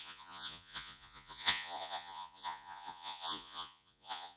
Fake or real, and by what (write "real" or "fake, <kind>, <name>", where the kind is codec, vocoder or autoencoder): fake, vocoder, Vocos